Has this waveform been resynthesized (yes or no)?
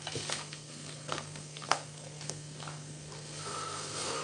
yes